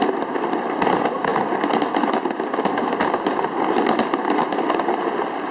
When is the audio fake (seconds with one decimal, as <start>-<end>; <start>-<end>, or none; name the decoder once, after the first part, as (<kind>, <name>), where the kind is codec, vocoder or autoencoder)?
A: 0.0-1.3 (vocoder, BigVGAN v2); 2.6-4.2; 5.0-5.5